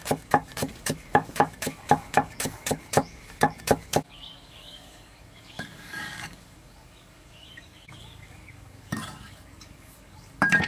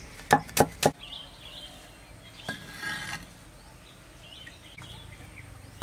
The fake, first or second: first